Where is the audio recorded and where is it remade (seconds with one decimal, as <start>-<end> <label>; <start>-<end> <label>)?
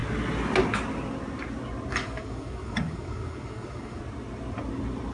0.0-1.9 recorded; 1.9-4.0 remade; 4.0-5.1 recorded